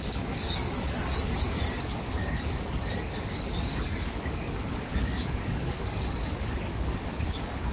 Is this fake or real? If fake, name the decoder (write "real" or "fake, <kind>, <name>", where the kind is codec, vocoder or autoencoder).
fake, codec, DAC